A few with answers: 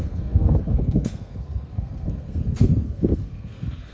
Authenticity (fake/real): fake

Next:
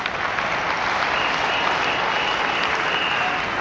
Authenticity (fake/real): real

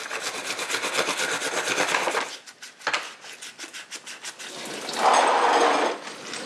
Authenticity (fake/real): real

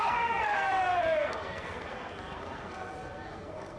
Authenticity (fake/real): fake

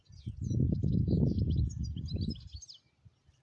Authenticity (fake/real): real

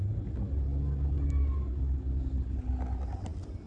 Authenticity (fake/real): real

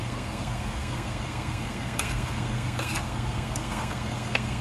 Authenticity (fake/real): fake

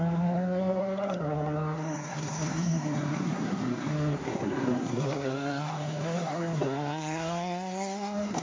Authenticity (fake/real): fake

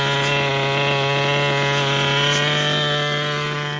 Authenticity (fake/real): real